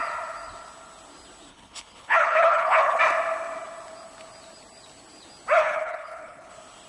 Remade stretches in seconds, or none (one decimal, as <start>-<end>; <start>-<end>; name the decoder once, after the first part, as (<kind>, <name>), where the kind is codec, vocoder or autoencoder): 1.5-3.0 (codec, HILCodec); 5.6-6.5